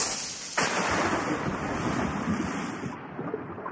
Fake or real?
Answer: real